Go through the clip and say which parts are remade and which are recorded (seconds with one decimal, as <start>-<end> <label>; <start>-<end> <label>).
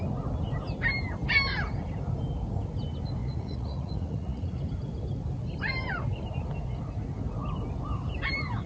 0.0-3.2 recorded; 3.2-4.6 remade; 4.6-8.7 recorded